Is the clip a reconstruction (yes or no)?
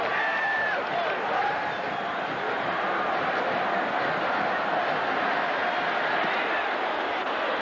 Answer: no